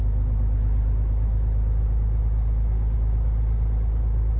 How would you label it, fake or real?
real